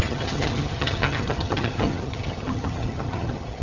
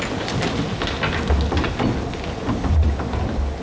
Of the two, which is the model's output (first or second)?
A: first